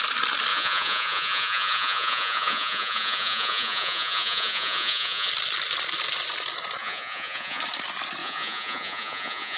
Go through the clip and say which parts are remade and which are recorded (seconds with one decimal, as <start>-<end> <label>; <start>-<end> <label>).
0.0-0.5 recorded; 0.5-5.3 remade; 5.3-6.8 recorded; 6.8-7.6 remade; 7.6-8.2 recorded; 8.2-9.6 remade